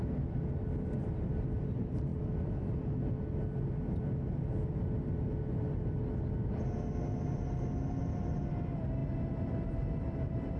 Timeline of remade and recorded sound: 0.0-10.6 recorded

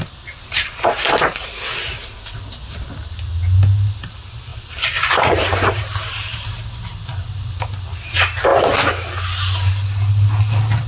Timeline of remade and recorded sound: 0.0-10.9 recorded

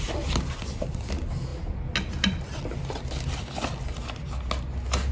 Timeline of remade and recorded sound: 0.0-5.1 recorded

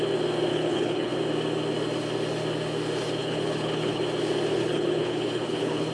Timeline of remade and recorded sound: 0.0-0.5 recorded; 0.5-1.1 remade; 1.1-3.2 recorded; 3.2-4.0 remade; 4.0-4.5 recorded; 4.5-5.9 remade

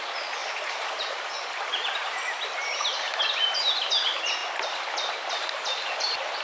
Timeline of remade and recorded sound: 0.0-0.4 recorded; 0.4-3.2 remade; 3.2-6.4 recorded

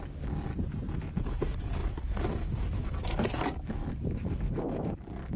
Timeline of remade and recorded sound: 0.0-0.5 remade; 0.5-1.2 recorded; 1.2-5.4 remade

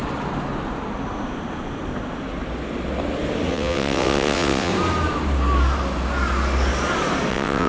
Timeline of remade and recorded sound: 0.0-3.5 recorded; 3.5-4.7 remade; 4.7-7.3 recorded; 7.3-7.7 remade